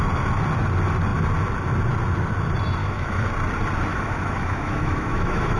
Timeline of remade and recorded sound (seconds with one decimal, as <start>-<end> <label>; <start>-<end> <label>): 0.0-2.8 recorded; 2.8-3.3 remade; 3.3-3.9 recorded; 3.9-5.6 remade